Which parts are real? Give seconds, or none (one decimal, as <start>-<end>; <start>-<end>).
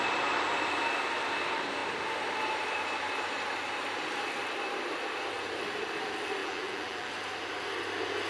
0.0-6.4; 7.1-8.3